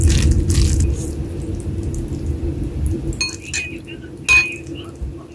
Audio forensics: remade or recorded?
recorded